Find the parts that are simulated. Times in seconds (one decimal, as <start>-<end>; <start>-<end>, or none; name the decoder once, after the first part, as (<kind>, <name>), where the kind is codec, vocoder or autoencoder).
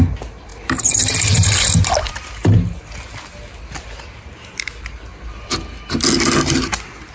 none